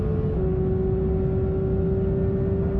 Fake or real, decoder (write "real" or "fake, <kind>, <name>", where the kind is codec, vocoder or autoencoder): real